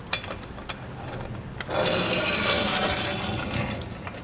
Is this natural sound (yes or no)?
yes